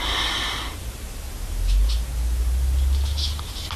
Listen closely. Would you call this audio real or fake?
real